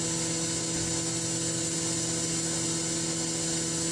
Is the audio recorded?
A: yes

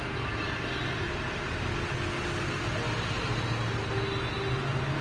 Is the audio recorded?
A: yes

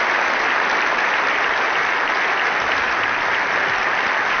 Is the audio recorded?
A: yes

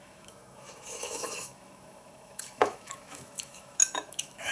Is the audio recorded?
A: no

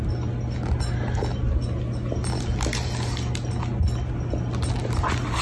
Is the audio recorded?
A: yes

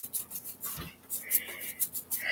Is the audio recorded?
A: yes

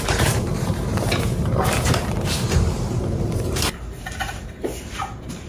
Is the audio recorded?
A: no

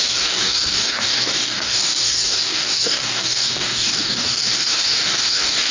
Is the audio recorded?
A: no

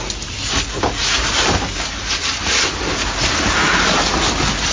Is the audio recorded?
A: yes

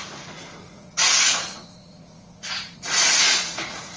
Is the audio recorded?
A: no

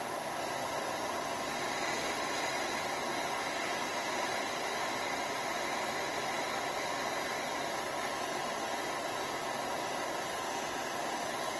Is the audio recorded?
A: yes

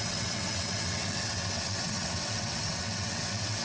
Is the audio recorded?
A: no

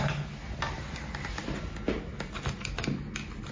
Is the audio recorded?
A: yes